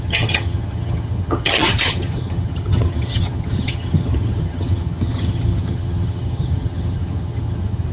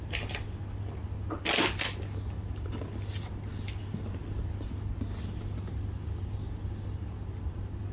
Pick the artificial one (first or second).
first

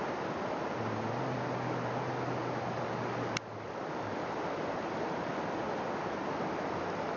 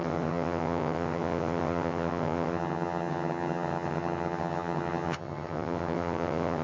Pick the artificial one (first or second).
second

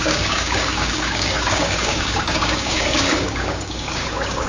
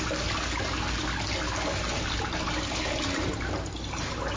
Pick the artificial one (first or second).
first